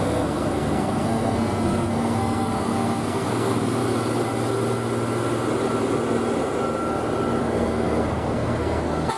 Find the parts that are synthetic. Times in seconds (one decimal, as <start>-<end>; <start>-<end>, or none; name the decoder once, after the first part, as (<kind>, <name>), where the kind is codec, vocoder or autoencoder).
0.0-3.8 (codec, SNAC); 7.4-9.2